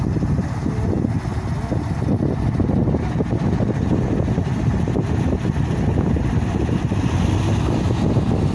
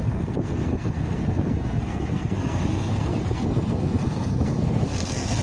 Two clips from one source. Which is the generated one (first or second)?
second